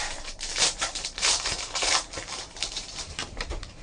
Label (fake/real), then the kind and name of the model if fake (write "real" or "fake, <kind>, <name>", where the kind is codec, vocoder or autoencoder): fake, vocoder, BigVGAN v2